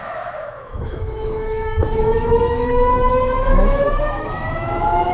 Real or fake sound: fake